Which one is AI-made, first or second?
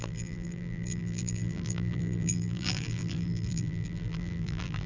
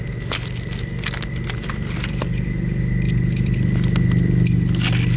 first